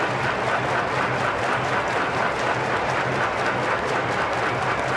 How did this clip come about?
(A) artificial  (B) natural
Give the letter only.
B